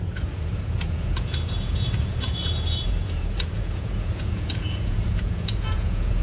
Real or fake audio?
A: fake